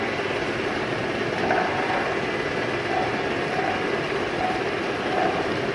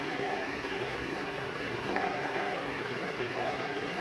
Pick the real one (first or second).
first